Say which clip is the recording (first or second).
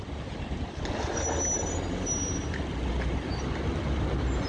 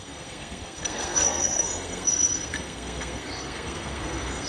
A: first